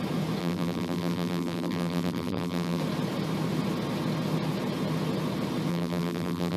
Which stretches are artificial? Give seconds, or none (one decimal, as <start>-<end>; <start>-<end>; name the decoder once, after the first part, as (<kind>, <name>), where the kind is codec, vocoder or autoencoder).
0.4-2.8 (vocoder, BigVGAN v2); 5.7-6.6